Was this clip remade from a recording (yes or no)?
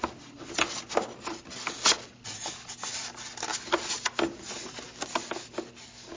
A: no